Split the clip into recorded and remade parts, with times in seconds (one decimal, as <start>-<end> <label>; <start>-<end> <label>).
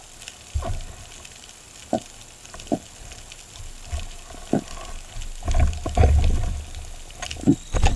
0.0-8.0 recorded